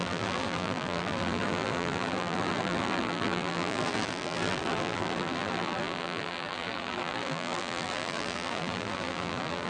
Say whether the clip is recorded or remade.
remade